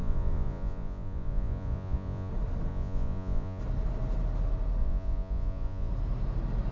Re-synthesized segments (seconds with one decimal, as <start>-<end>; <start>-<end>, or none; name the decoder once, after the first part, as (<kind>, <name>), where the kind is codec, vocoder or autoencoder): 0.0-2.3 (vocoder, Vocos); 2.7-3.6; 4.8-5.9